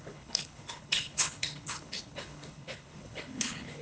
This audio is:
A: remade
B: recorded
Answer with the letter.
A